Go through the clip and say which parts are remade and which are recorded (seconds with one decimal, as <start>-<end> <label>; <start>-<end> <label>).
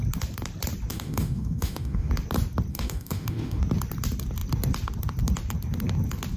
0.0-0.9 recorded; 0.9-2.1 remade; 2.1-2.7 recorded; 2.7-3.6 remade; 3.6-6.4 recorded